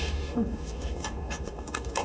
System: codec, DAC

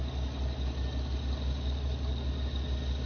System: none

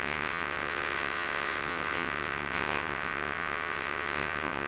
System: vocoder, WaveNeXt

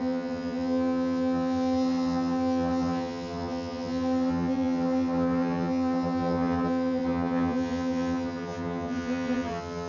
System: vocoder, HiFi-GAN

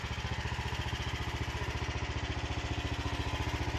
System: none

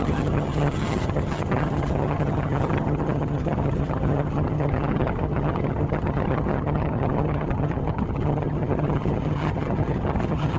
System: vocoder, HiFi-GAN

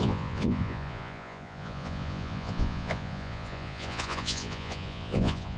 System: vocoder, Vocos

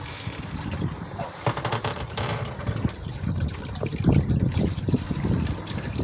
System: vocoder, BigVGAN v2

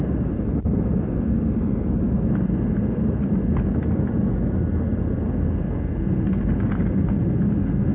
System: none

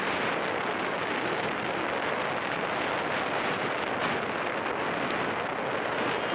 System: none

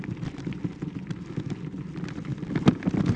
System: none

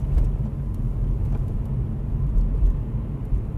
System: none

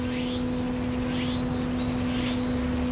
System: none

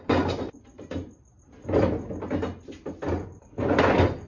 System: none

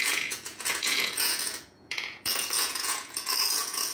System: vocoder, Vocos